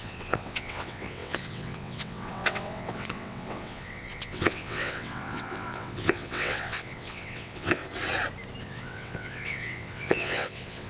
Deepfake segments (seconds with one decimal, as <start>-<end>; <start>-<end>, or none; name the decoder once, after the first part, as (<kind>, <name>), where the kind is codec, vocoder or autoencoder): 0.0-7.8 (vocoder, WaveNeXt); 8.6-10.9